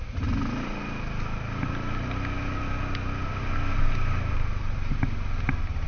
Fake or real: real